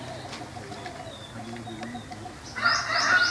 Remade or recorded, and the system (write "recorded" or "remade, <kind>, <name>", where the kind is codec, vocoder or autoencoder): recorded